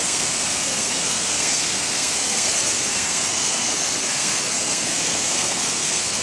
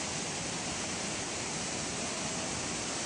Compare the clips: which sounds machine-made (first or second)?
first